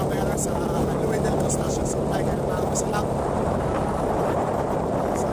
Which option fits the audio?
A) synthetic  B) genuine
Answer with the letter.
A